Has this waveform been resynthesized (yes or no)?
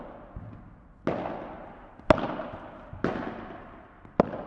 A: no